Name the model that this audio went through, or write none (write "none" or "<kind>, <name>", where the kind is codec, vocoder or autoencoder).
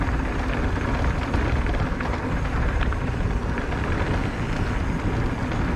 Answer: none